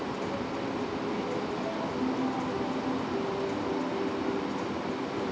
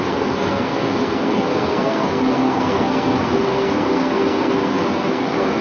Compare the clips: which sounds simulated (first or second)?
second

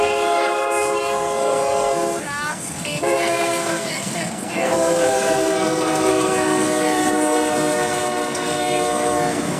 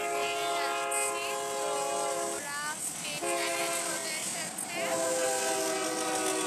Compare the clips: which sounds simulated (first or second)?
first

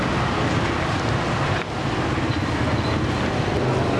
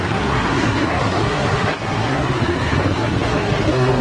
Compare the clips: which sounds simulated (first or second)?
second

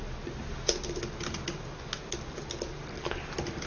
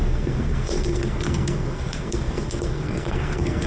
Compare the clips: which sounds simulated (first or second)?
second